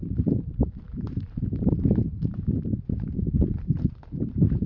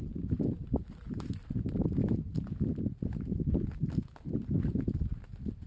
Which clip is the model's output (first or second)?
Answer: first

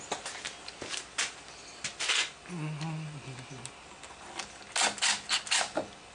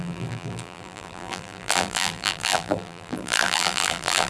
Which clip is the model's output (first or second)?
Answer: second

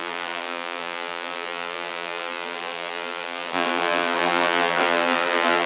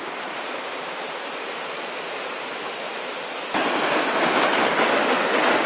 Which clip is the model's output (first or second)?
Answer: first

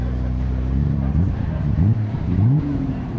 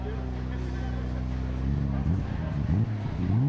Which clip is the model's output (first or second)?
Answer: first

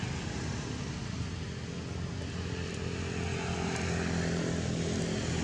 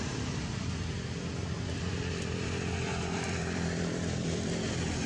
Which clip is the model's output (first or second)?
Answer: second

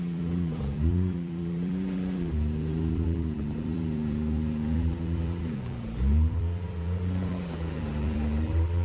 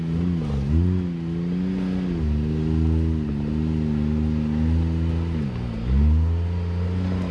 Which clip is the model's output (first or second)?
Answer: first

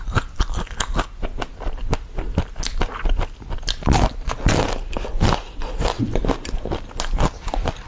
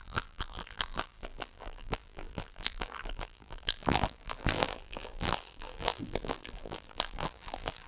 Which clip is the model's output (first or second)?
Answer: second